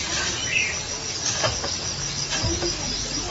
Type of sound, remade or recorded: recorded